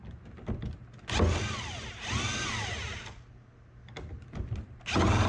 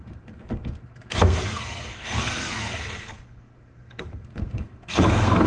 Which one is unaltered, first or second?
first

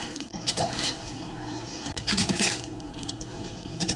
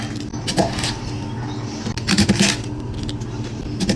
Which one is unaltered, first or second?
second